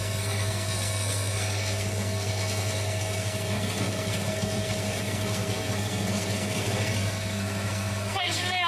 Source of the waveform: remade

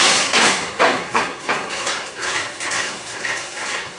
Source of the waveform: remade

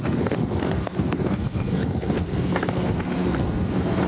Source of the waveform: remade